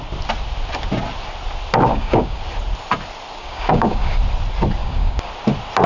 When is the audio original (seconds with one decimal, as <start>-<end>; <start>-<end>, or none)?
0.0-1.9; 2.4-3.4; 4.2-4.8; 5.3-5.9